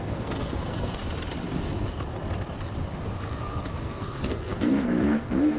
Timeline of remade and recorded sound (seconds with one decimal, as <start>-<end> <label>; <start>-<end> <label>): 0.0-1.0 remade; 1.0-3.7 recorded; 3.7-5.6 remade